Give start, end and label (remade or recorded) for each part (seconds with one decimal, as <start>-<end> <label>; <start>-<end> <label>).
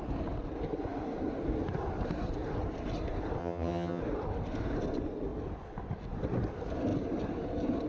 0.0-3.4 recorded; 3.4-4.0 remade; 4.0-7.9 recorded